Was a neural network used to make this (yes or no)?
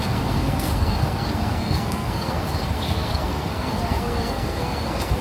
yes